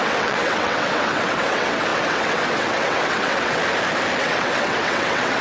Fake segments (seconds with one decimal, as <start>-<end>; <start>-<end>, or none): 0.0-3.6; 4.2-5.4